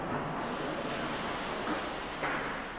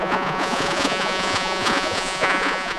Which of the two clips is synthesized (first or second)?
second